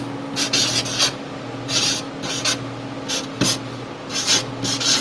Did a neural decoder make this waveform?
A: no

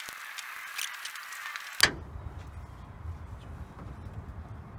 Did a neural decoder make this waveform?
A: no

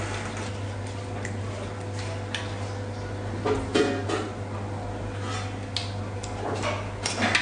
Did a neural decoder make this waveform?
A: no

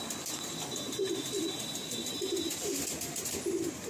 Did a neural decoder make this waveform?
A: no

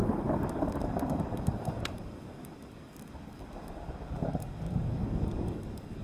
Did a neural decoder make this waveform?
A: yes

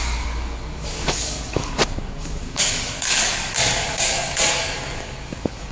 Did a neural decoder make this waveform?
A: yes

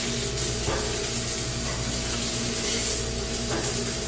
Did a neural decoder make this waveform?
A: no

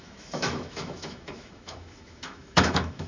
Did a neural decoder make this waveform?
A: yes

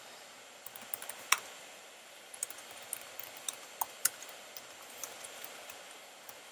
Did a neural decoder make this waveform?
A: no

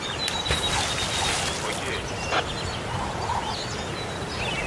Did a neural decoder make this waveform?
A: no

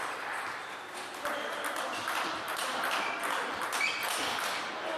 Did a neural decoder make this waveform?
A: no